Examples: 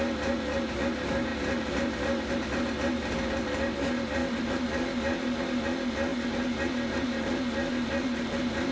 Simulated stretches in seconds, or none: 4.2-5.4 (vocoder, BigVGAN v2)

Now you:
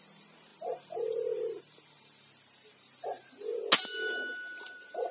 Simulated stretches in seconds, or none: 0.0-3.6 (vocoder, BigVGAN v2); 4.6-5.1

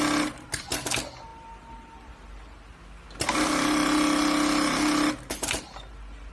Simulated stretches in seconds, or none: none

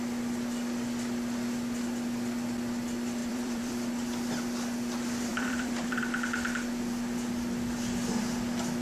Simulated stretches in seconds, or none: 3.2-3.7 (vocoder, BigVGAN v2); 5.3-6.0

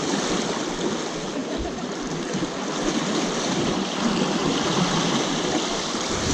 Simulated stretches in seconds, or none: 4.4-5.5 (vocoder, BigVGAN v2)

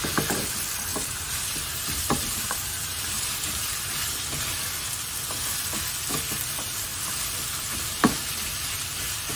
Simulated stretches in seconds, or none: 0.9-4.0 (vocoder, BigVGAN v2); 6.9-9.4

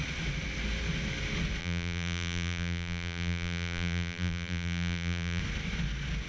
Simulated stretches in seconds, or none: 1.6-5.4 (vocoder, BigVGAN v2)

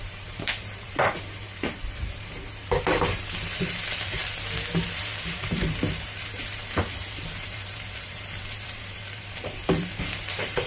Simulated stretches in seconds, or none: 0.0-4.2 (vocoder, BigVGAN v2); 4.8-10.7